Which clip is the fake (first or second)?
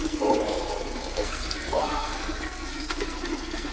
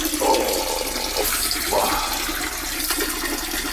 first